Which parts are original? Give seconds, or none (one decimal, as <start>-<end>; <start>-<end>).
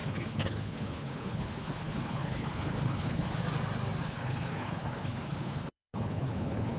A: 3.4-4.0